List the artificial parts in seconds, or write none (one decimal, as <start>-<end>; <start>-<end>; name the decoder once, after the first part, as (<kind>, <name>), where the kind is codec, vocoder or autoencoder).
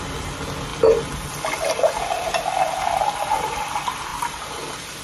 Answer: none